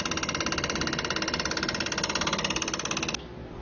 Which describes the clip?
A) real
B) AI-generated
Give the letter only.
A